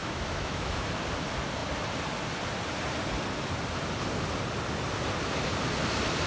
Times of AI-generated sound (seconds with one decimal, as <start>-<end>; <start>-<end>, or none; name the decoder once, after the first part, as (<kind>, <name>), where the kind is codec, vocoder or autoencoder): 0.0-0.9 (autoencoder, DAC-VAE)